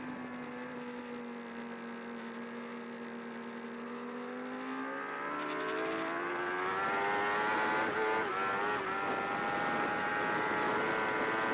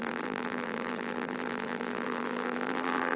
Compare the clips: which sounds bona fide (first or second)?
first